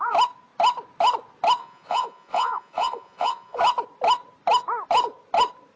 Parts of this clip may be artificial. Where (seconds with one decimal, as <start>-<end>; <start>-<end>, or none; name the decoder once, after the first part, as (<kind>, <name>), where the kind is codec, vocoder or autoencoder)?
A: 1.6-3.6 (vocoder, Vocos)